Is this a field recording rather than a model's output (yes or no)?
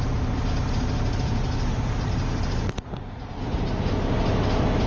yes